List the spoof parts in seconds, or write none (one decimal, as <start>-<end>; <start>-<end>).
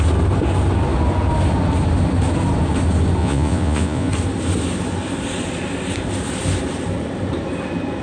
3.2-4.1